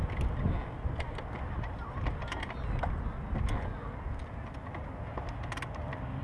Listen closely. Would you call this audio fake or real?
real